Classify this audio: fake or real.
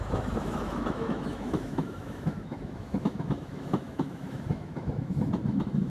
fake